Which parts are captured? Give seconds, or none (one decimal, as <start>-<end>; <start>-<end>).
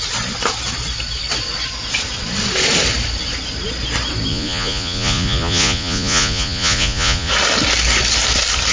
0.0-4.3; 7.3-8.7